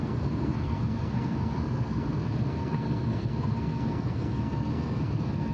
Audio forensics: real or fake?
fake